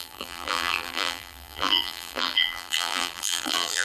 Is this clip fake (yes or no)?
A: yes